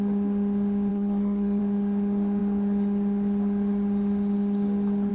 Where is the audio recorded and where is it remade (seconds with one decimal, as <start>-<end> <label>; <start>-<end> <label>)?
0.0-0.9 recorded; 0.9-1.6 remade; 1.6-5.1 recorded